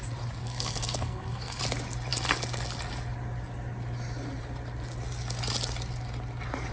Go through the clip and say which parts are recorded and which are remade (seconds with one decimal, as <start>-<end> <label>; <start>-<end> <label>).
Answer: 0.0-0.4 recorded; 0.4-1.6 remade; 1.6-6.7 recorded